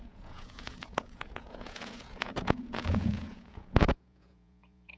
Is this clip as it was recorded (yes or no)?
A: no